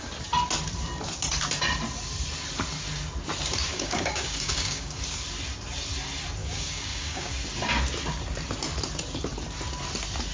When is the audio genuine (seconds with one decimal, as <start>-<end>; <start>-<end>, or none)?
0.0-3.7; 5.0-6.4; 7.3-10.3